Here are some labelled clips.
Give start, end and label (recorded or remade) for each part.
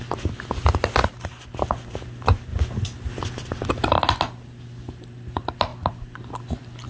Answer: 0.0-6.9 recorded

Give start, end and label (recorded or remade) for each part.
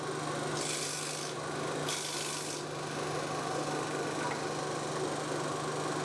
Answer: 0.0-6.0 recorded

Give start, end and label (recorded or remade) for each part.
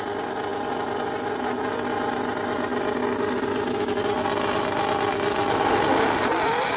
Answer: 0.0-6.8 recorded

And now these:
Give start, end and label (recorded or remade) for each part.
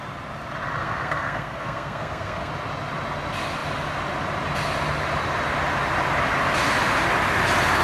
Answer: 0.0-0.8 recorded; 0.8-2.5 remade; 2.5-7.8 recorded